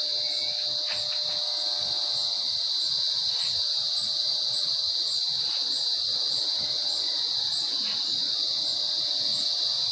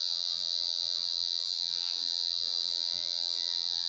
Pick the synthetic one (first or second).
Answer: second